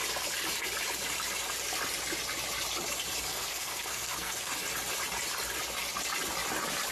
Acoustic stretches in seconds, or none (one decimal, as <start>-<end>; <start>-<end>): 0.0-3.3; 4.5-6.9

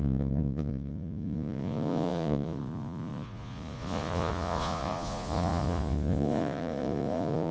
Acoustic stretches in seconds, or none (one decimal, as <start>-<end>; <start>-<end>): none

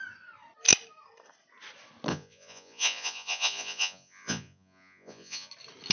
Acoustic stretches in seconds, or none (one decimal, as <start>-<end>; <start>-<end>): 0.0-2.1; 5.5-5.9

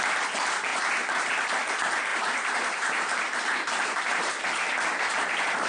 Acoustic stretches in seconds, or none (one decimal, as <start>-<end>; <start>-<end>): 0.0-0.7; 1.7-2.1; 3.0-4.1; 4.7-5.7

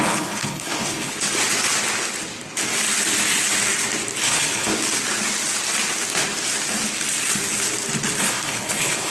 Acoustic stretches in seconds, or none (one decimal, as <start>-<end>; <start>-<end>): 1.1-4.2; 4.7-8.2

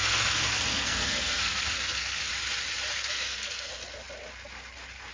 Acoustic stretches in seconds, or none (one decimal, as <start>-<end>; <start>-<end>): 2.3-2.9; 3.7-5.1

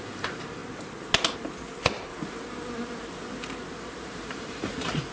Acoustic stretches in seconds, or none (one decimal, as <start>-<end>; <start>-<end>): 0.6-3.7

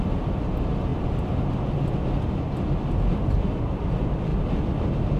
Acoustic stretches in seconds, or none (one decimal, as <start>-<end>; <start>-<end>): 0.0-5.2